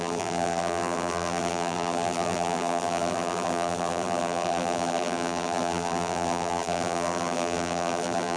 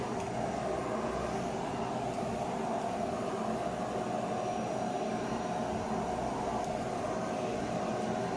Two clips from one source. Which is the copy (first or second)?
first